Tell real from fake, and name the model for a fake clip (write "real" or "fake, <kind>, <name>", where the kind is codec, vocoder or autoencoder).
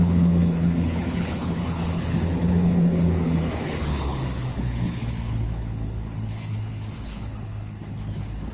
fake, codec, HILCodec